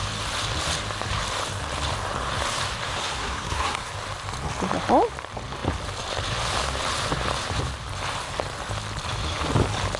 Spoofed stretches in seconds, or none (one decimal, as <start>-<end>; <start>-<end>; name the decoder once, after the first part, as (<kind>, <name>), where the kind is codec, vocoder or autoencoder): 3.0-3.9 (codec, SNAC)